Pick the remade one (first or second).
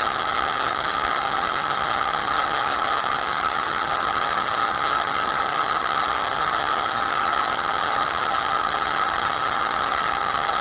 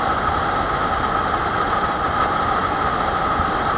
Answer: first